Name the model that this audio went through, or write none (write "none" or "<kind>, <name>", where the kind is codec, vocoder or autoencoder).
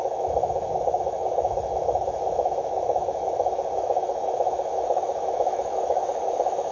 autoencoder, DAC-VAE